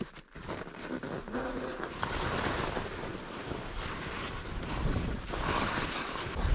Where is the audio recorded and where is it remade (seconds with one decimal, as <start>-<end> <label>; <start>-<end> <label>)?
0.0-1.2 recorded; 1.2-1.7 remade; 1.7-6.5 recorded